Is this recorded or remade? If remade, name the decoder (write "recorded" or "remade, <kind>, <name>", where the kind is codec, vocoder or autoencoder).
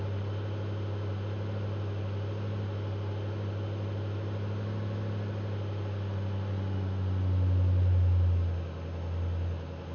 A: recorded